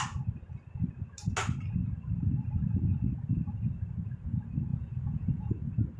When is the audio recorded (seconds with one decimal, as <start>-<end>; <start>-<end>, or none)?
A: 0.0-4.7; 5.5-6.0